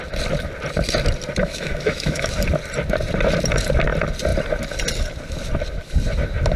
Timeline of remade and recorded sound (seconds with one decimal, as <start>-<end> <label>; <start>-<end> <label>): 0.0-1.4 recorded; 1.4-2.3 remade; 2.3-6.6 recorded

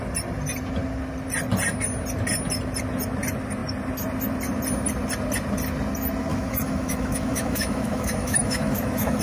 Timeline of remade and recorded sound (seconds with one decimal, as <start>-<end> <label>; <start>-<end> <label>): 0.0-6.3 recorded; 6.3-9.2 remade